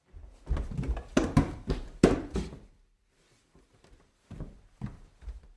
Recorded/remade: recorded